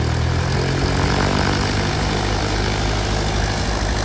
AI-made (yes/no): no